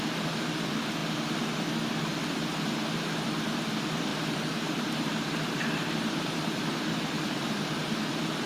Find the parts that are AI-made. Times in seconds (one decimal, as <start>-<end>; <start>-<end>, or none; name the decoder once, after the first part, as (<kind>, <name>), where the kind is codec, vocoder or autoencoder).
4.1-7.9 (vocoder, BigVGAN v2)